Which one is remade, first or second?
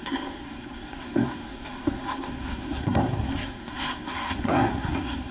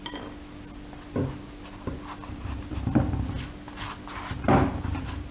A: first